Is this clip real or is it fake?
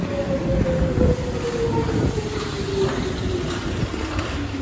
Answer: real